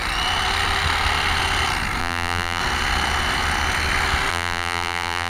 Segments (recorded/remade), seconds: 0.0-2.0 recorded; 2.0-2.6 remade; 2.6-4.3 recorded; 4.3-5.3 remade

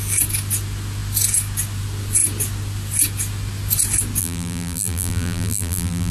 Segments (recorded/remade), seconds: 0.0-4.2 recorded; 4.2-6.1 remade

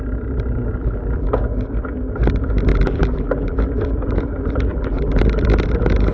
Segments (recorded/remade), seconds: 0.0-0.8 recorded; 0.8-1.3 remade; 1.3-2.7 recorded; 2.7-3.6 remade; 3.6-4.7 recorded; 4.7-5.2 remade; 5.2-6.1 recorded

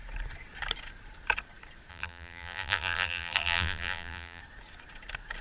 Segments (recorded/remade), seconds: 0.0-1.9 recorded; 1.9-4.4 remade; 4.4-5.4 recorded

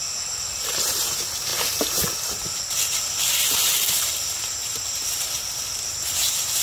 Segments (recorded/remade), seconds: 0.0-6.6 recorded